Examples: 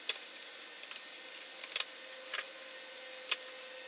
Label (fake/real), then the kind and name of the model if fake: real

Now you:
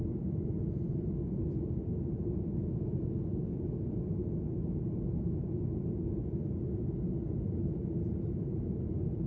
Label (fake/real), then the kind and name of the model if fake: real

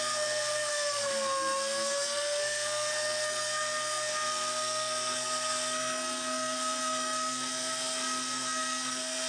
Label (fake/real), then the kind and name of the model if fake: fake, codec, SNAC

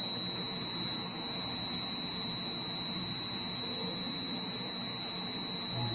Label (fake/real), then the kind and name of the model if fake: real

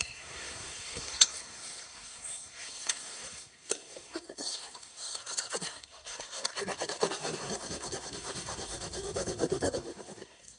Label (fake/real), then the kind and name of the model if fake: fake, codec, SNAC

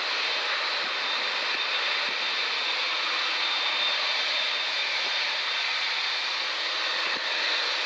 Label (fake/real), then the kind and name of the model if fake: real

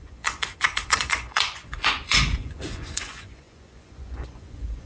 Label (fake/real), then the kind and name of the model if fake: fake, vocoder, Vocos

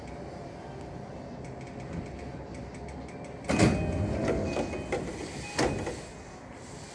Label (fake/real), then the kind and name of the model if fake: real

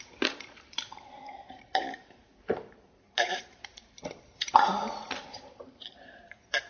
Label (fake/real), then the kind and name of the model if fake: fake, vocoder, BigVGAN v2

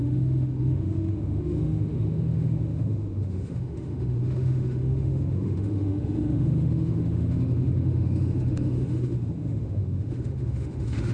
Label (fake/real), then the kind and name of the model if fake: fake, autoencoder, DAC-VAE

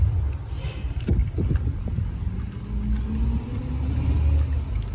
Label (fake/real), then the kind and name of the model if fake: real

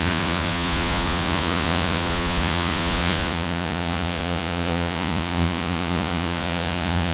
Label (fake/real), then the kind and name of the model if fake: fake, vocoder, Vocos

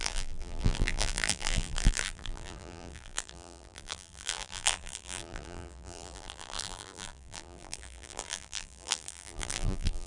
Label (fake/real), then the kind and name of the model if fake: fake, vocoder, BigVGAN v2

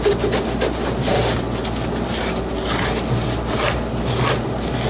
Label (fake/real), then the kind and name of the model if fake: real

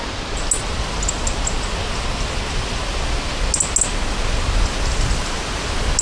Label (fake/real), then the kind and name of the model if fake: real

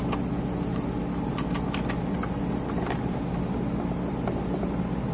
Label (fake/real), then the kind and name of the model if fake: real